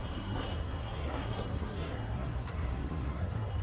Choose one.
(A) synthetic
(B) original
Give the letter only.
A